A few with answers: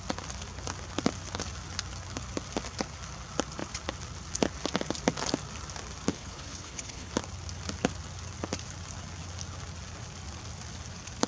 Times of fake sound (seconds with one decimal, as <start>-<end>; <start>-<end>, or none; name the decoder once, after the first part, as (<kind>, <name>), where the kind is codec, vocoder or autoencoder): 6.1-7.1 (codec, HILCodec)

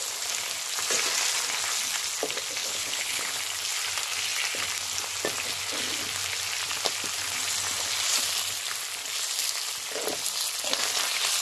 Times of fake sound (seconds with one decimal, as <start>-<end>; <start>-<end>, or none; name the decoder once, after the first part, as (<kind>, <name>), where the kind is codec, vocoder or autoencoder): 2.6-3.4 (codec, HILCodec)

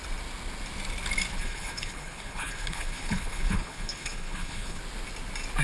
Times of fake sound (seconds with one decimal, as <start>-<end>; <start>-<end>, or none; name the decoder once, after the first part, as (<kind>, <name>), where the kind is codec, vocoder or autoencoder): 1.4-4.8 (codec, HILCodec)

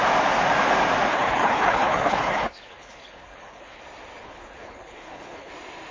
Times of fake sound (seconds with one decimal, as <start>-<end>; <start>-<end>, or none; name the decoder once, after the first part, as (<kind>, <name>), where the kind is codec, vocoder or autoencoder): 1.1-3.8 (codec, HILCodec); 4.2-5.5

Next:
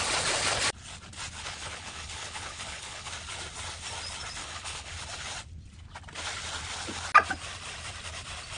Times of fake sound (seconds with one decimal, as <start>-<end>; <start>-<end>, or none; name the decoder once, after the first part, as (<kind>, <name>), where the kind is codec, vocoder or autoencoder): 1.4-3.1 (codec, HILCodec); 4.4-4.9